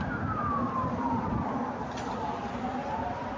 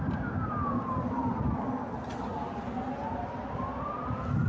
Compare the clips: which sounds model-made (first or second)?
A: first